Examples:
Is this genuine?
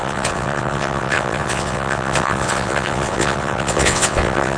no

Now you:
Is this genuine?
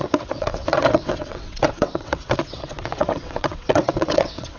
no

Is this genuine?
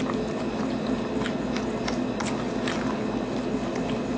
yes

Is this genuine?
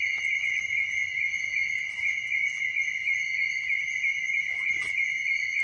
yes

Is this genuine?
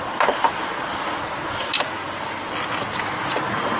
yes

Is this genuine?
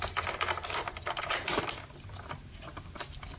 yes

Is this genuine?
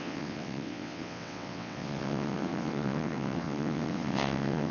no